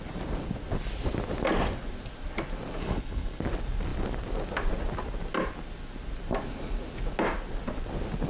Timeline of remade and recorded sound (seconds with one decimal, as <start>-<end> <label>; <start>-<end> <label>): 0.0-2.8 recorded; 2.8-3.4 remade; 3.4-8.3 recorded